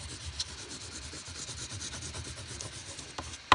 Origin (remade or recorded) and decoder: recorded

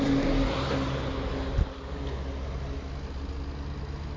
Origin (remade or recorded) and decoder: recorded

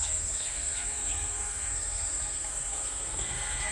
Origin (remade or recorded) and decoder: remade, codec, SNAC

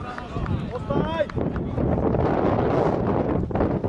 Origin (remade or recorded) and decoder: recorded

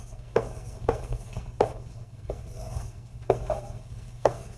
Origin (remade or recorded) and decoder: remade, codec, SNAC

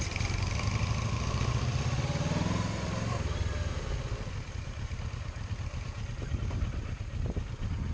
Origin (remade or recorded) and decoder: recorded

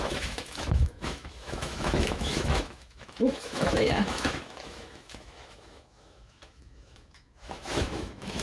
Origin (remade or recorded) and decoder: remade, autoencoder, DAC-VAE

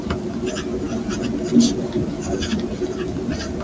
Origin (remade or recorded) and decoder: recorded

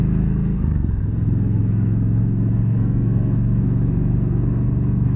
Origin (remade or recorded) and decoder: remade, codec, SNAC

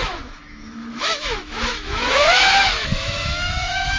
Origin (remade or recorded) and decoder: remade, autoencoder, DAC-VAE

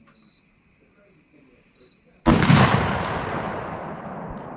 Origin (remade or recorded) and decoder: recorded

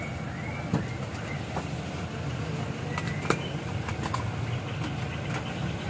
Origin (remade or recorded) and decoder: recorded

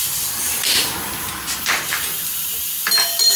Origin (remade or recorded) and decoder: remade, vocoder, BigVGAN v2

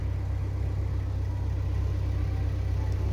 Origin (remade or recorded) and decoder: recorded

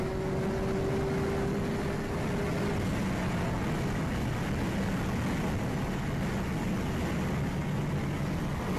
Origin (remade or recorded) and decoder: recorded